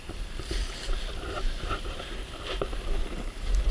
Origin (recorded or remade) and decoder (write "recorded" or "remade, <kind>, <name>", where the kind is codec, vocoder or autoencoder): remade, vocoder, BigVGAN v2